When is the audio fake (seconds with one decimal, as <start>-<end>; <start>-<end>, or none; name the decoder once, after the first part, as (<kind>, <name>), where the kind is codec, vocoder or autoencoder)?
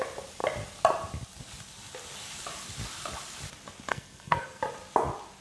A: 3.9-4.6 (codec, SNAC)